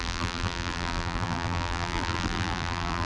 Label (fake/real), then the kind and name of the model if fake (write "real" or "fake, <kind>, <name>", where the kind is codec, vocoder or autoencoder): fake, vocoder, BigVGAN v2